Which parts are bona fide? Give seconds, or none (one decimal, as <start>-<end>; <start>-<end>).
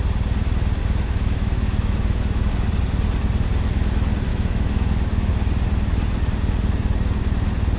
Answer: 0.0-0.8; 2.5-4.3; 5.3-7.8